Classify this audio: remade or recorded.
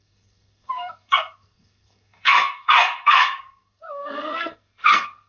remade